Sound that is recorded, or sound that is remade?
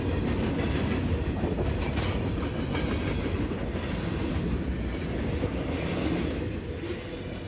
recorded